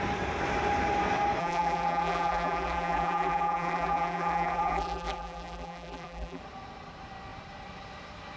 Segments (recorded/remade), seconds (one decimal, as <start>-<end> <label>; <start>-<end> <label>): 0.0-1.4 recorded; 1.4-6.4 remade; 6.4-8.4 recorded